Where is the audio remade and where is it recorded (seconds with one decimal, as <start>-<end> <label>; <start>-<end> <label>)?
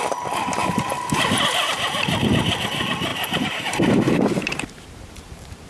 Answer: 0.0-0.6 recorded; 0.6-2.6 remade; 2.6-3.1 recorded; 3.1-5.7 remade